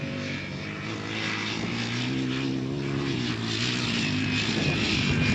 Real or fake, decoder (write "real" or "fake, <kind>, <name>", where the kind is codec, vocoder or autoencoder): real